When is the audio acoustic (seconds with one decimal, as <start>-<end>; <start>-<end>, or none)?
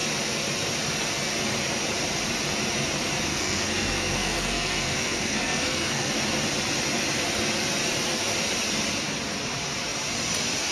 0.0-3.3; 6.1-10.7